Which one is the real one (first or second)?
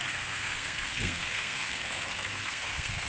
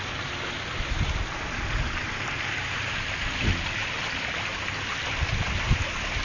second